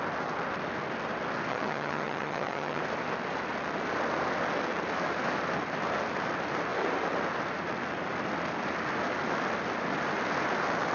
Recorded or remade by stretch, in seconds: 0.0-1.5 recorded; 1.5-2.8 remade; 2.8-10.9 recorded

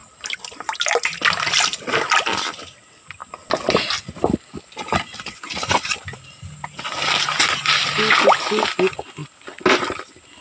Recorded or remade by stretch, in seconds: 0.0-10.4 recorded

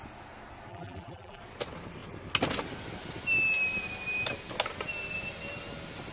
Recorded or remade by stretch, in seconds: 0.0-0.7 recorded; 0.7-1.4 remade; 1.4-6.1 recorded

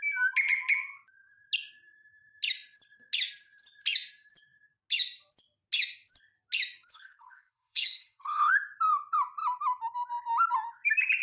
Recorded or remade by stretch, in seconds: 0.0-6.9 recorded; 6.9-8.5 remade; 8.5-11.2 recorded

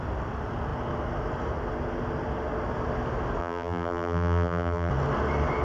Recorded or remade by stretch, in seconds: 0.0-3.4 recorded; 3.4-4.9 remade; 4.9-5.6 recorded

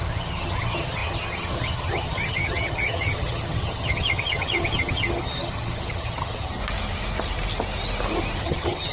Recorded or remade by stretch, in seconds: 0.0-6.6 remade; 6.6-8.4 recorded; 8.4-8.9 remade

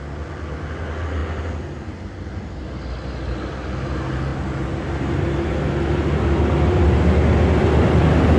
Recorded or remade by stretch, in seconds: 0.0-1.2 recorded; 1.2-2.8 remade; 2.8-4.3 recorded; 4.3-4.9 remade; 4.9-8.4 recorded

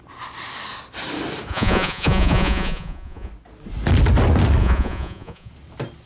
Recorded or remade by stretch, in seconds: 0.0-1.5 recorded; 1.5-3.3 remade; 3.3-4.6 recorded; 4.6-5.5 remade; 5.5-6.1 recorded